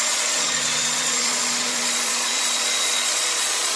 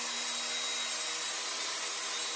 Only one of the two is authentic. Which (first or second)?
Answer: second